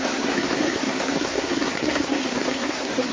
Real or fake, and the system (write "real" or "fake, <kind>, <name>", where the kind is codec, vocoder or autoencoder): fake, codec, SNAC